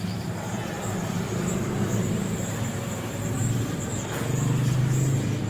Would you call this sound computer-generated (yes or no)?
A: yes